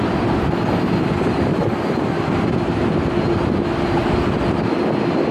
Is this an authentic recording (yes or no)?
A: yes